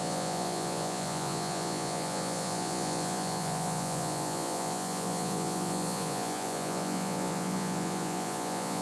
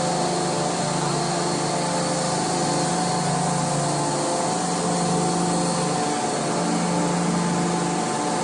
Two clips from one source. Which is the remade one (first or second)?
first